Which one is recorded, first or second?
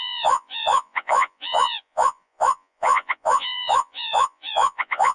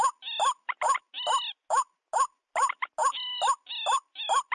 second